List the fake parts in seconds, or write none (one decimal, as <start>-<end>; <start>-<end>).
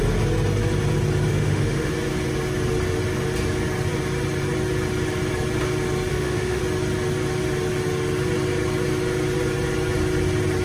1.3-1.9; 6.1-6.6